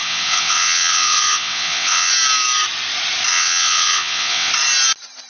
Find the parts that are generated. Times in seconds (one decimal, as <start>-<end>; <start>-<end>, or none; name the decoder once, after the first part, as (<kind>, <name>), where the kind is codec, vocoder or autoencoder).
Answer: 0.0-2.1 (vocoder, WaveNeXt); 3.3-4.5